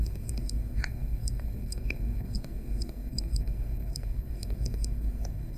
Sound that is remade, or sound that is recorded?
remade